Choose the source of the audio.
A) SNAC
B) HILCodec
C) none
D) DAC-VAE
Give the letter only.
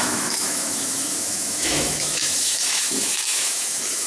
D